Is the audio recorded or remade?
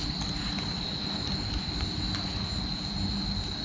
recorded